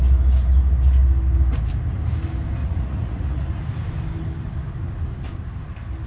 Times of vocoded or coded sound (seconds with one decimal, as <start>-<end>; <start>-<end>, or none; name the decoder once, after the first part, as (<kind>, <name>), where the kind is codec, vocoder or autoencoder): 2.6-3.6 (vocoder, Vocos)